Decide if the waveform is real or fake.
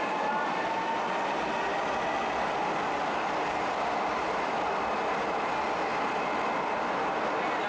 real